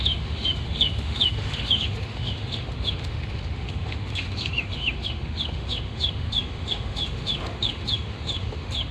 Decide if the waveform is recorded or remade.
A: remade